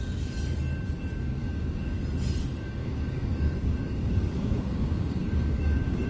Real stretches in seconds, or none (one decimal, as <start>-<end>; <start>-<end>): 0.0-1.4; 2.0-2.8